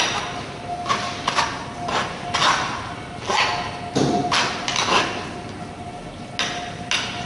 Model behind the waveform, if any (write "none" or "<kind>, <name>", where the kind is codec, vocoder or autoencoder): none